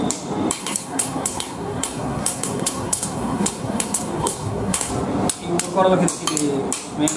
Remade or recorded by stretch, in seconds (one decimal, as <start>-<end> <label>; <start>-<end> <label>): 0.0-0.6 recorded; 0.6-4.9 remade; 4.9-7.2 recorded